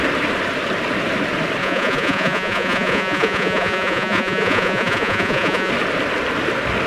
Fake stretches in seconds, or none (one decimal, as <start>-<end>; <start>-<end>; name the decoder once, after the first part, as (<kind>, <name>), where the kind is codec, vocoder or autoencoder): 1.6-5.7 (vocoder, Vocos)